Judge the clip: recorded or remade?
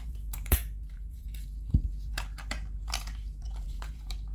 remade